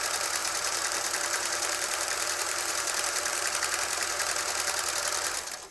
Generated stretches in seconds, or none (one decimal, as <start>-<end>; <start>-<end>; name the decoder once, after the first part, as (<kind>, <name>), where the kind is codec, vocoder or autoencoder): 0.4-3.5 (vocoder, BigVGAN v2)